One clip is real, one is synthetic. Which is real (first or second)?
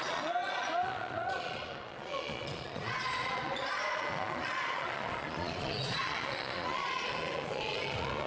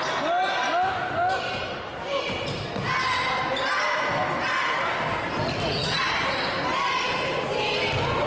second